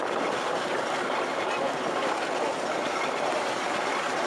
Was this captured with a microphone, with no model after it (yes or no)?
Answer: yes